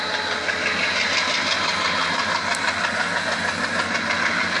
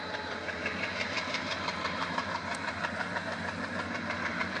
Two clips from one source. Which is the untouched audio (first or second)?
first